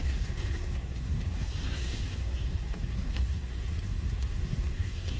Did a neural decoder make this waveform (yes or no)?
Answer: yes